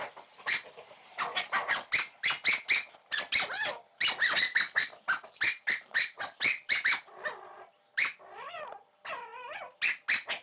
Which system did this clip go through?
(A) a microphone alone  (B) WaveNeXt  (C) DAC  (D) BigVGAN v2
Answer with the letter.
A